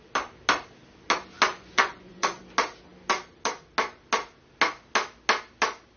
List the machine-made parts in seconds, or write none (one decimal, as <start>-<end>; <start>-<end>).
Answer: 1.5-2.4